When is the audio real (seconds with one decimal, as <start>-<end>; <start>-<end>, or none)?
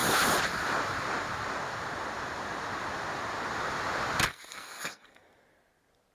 0.0-4.3; 5.2-6.1